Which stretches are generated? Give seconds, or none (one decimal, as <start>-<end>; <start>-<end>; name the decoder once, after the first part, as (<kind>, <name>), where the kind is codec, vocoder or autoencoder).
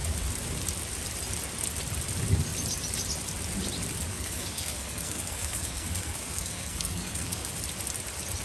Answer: 4.1-7.5 (codec, SNAC)